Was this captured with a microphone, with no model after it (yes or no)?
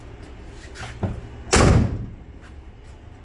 yes